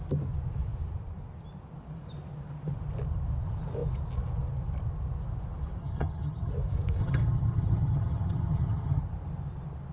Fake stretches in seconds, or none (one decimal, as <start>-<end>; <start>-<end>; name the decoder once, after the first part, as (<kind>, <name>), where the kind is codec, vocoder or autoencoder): 5.8-6.5 (vocoder, HiFi-GAN); 7.0-9.0